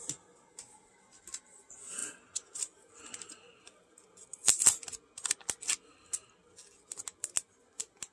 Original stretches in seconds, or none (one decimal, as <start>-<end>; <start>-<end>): 0.0-8.1